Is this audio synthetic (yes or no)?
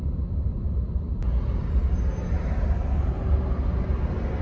no